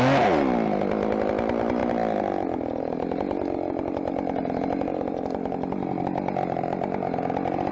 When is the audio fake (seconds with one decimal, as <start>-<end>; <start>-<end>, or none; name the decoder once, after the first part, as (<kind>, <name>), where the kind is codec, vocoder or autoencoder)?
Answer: none